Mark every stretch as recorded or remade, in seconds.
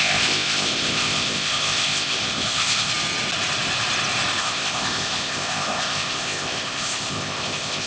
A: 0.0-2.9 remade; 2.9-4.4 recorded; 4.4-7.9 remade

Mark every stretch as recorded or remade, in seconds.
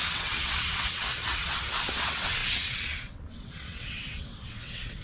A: 0.0-5.0 remade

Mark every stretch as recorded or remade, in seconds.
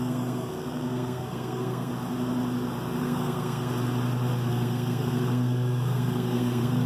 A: 0.0-1.9 remade; 1.9-3.0 recorded; 3.0-3.7 remade; 3.7-4.5 recorded; 4.5-6.9 remade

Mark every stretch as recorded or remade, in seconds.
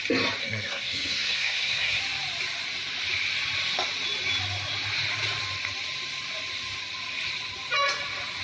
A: 0.0-0.4 recorded; 0.4-2.0 remade; 2.0-8.4 recorded